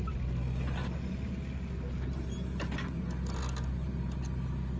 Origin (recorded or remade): recorded